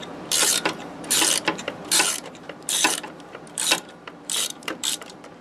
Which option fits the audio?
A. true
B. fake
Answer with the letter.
B